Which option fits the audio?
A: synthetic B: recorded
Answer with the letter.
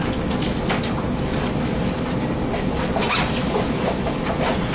B